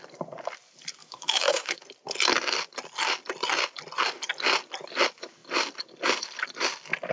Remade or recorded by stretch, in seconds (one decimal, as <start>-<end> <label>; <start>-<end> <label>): 0.0-1.0 recorded; 1.0-1.8 remade; 1.8-7.1 recorded